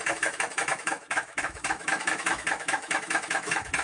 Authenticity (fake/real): fake